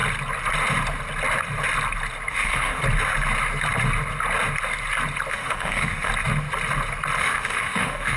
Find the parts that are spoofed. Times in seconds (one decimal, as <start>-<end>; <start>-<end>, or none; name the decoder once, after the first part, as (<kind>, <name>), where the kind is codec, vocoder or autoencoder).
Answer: 2.3-2.8 (autoencoder, DAC-VAE); 5.3-6.1; 7.2-8.2